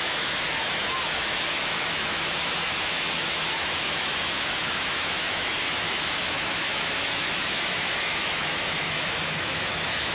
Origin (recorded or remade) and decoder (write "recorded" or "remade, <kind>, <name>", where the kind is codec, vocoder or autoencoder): remade, autoencoder, DAC-VAE